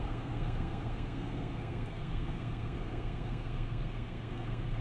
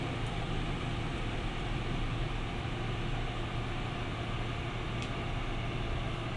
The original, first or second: second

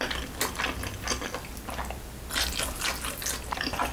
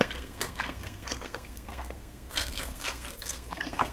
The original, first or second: first